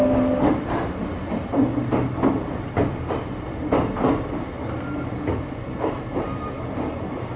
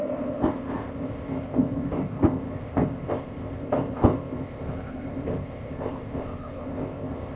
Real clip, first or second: first